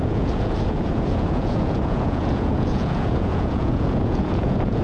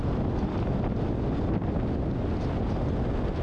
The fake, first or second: first